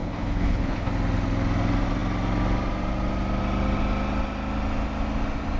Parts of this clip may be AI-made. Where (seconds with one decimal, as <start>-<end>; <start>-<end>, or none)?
0.0-0.9